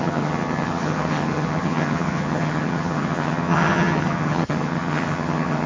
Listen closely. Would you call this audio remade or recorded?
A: remade